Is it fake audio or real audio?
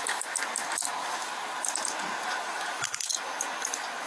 real